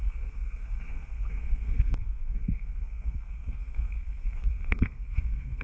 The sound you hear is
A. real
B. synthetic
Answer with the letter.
B